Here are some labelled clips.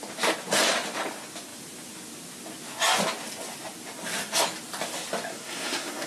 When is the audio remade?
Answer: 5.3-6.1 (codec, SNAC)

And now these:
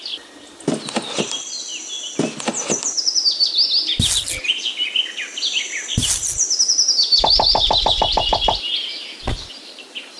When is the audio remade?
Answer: 0.0-1.7 (vocoder, BigVGAN v2); 5.2-6.0; 6.9-10.2

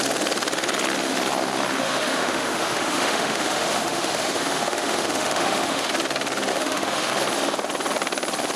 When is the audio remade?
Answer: 1.8-5.9 (autoencoder, DAC-VAE); 6.5-7.1

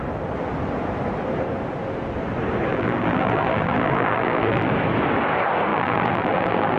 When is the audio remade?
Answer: 2.7-4.7 (vocoder, BigVGAN v2); 5.7-6.8

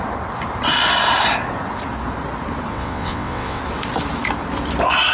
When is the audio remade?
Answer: 2.7-3.6 (vocoder, WaveNeXt)

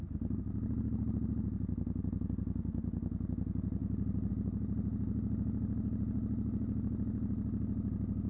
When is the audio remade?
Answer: none

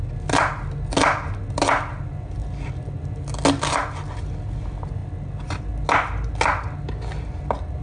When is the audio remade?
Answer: none

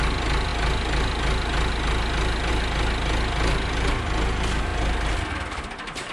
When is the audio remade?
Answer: none